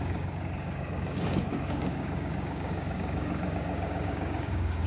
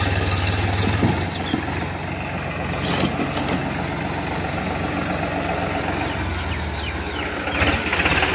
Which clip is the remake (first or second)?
first